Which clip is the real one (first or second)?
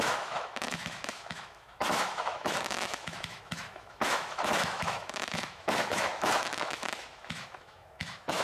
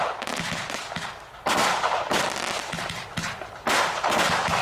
second